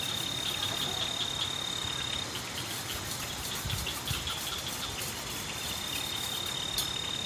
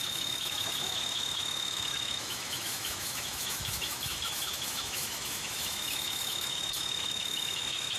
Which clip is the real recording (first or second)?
first